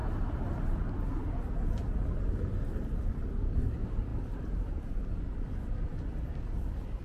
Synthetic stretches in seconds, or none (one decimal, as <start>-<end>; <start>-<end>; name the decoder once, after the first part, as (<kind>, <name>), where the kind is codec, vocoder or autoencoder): none